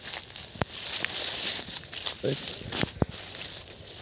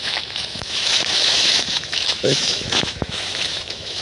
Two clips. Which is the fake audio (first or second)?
second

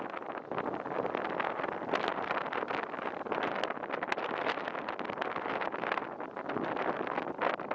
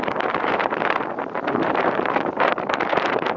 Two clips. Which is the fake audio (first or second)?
second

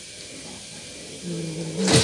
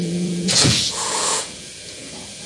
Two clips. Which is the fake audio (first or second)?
second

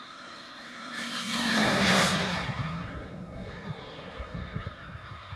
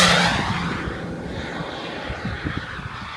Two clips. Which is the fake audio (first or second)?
first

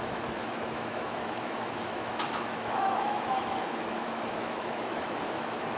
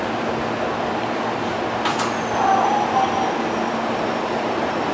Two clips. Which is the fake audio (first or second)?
first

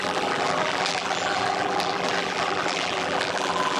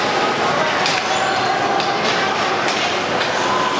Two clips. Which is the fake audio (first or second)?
first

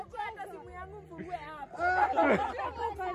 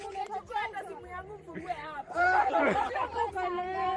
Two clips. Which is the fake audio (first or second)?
second